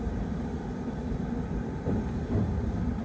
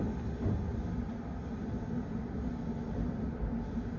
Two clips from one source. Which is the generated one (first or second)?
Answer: first